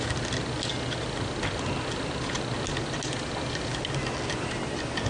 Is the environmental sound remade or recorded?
recorded